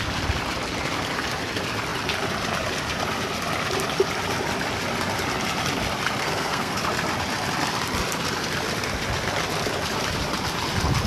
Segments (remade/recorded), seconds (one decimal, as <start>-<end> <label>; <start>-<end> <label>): 0.0-6.2 recorded; 6.2-6.8 remade; 6.8-11.1 recorded